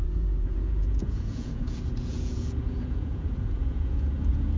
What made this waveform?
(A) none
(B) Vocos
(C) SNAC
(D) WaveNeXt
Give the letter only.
B